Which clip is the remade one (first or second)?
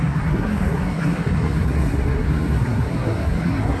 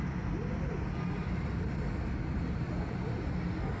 first